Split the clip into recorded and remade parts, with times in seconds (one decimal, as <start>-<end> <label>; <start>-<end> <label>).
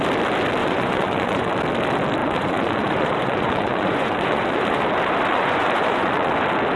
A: 0.0-0.6 recorded; 0.6-1.5 remade; 1.5-2.2 recorded; 2.2-4.8 remade; 4.8-5.3 recorded; 5.3-6.3 remade; 6.3-6.8 recorded